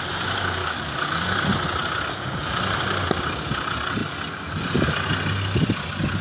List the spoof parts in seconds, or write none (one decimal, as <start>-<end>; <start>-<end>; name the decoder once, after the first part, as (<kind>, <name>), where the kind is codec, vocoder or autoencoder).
0.6-1.4 (codec, DAC)